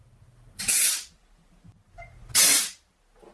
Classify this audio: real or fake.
real